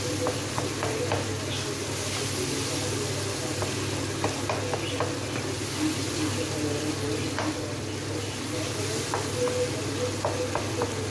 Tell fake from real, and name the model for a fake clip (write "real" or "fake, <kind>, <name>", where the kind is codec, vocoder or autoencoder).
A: real